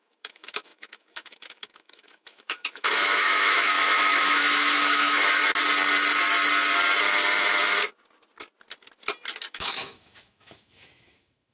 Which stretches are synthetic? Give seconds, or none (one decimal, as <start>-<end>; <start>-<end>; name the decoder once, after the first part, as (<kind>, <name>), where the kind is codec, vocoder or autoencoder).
0.0-5.4 (autoencoder, DAC-VAE); 9.5-11.5